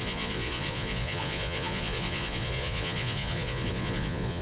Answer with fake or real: fake